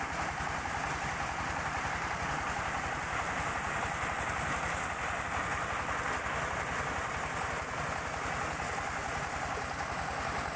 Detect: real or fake real